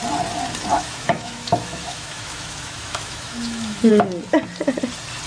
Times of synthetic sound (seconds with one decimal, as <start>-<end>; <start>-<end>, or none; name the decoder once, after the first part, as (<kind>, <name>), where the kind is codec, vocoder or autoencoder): 0.7-3.9 (autoencoder, DAC-VAE)